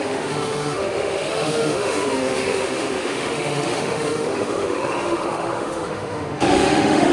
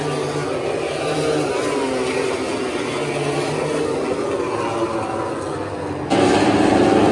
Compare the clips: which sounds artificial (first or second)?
first